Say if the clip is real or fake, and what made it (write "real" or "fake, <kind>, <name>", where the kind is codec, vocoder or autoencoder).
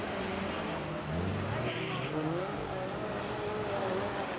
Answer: real